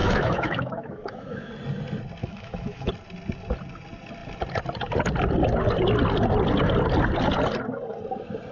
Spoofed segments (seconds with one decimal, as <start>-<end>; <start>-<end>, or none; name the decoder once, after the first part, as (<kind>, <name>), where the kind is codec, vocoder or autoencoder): 0.0-1.5 (autoencoder, DAC-VAE); 2.2-2.9